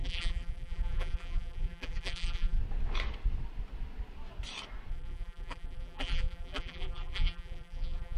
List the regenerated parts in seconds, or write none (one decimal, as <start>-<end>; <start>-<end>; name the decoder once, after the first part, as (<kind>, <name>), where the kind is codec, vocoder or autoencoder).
0.0-2.6 (vocoder, BigVGAN v2); 4.9-8.2